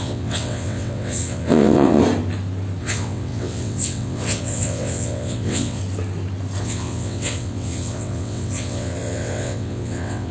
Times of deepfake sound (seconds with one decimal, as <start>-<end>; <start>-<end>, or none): 0.0-2.0; 2.8-5.8; 6.6-10.3